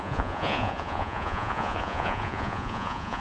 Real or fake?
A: fake